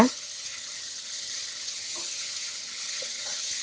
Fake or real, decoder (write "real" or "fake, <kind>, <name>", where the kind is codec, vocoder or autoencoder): fake, vocoder, HiFi-GAN